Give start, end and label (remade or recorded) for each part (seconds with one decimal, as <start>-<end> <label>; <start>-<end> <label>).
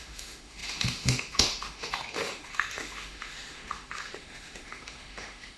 0.0-5.6 remade